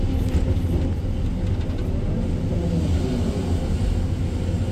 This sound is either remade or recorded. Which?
recorded